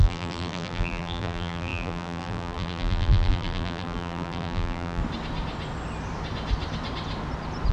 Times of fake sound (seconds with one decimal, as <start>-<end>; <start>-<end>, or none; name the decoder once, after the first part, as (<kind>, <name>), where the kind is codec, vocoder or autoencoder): 0.0-5.0 (vocoder, BigVGAN v2)